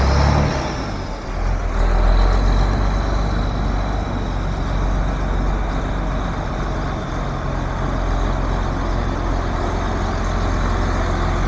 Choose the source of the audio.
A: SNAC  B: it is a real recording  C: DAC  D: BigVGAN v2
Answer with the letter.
B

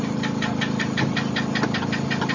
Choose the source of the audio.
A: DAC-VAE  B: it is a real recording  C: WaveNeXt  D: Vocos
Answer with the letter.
B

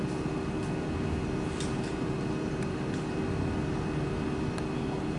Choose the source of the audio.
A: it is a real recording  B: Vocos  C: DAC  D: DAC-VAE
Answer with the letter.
A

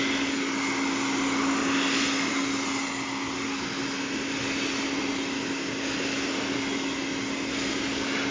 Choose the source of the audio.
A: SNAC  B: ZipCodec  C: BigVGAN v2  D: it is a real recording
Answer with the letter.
D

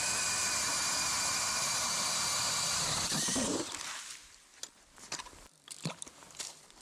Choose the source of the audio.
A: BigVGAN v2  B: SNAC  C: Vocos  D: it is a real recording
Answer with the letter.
D